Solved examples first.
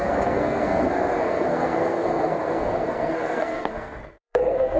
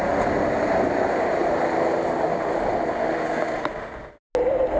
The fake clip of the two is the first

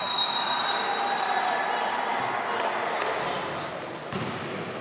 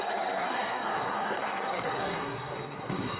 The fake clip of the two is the second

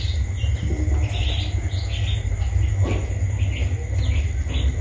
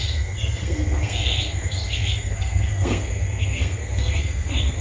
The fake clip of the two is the second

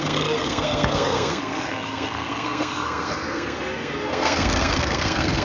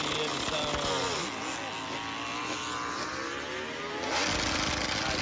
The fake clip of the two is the first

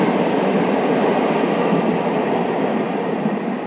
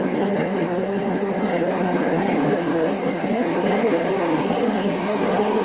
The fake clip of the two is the second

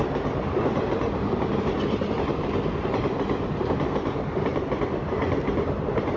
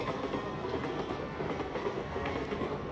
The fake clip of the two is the second